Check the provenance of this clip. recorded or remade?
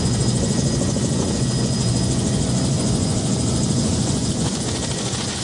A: remade